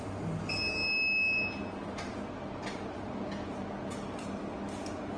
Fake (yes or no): no